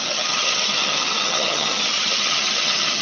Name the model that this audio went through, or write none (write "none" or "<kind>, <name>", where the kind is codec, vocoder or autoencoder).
vocoder, HiFi-GAN